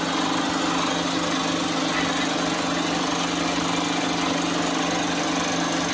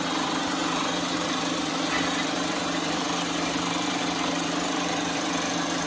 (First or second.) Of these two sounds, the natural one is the first